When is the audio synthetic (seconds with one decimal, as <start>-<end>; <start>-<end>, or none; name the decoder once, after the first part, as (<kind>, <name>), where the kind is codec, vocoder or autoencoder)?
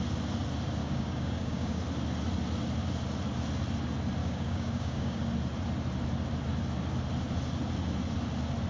0.8-1.8 (codec, DAC); 4.2-5.2